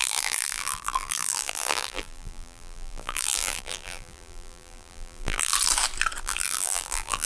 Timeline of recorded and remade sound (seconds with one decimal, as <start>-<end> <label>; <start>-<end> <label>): 0.0-5.5 remade; 5.5-6.2 recorded; 6.2-7.3 remade